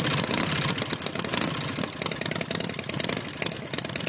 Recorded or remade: recorded